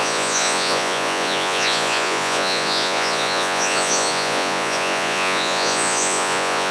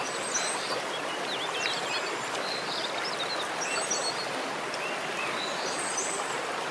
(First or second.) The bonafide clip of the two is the second